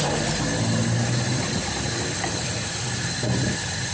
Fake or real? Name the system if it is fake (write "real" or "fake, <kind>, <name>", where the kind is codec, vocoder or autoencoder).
real